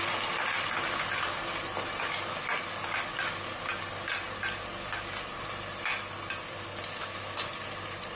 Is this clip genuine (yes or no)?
yes